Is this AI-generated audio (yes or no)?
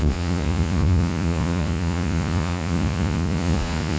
yes